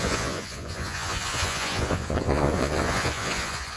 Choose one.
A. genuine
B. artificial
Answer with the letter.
B